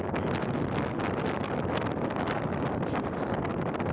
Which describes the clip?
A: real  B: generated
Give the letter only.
A